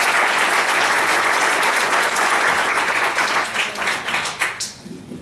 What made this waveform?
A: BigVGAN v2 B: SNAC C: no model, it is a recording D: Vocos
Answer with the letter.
D